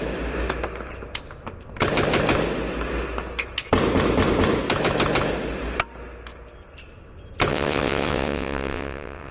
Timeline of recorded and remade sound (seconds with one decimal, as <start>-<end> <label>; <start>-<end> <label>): 0.0-7.5 recorded; 7.5-9.3 remade